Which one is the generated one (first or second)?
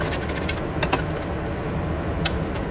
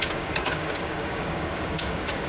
second